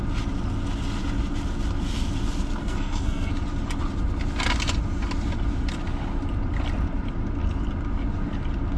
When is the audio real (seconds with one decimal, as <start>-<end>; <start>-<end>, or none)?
0.0-2.6; 3.3-8.8